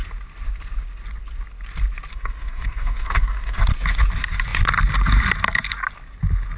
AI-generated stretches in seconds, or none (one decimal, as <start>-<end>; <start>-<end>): 2.1-3.6